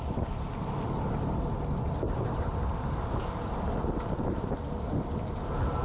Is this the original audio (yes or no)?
yes